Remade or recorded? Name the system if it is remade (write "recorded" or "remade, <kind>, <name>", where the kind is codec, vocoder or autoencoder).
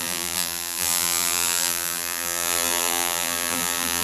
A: remade, vocoder, BigVGAN v2